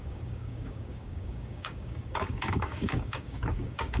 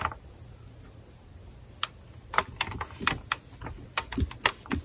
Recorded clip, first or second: second